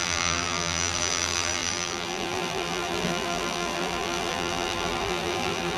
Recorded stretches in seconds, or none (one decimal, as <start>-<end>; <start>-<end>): none